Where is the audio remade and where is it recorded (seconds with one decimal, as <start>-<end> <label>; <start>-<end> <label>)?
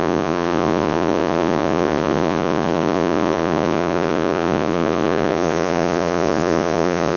0.0-7.2 remade